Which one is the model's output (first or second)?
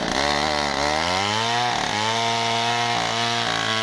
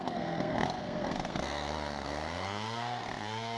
second